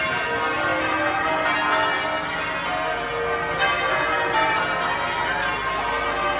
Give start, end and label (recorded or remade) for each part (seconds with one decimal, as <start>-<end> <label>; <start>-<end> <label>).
0.0-6.4 recorded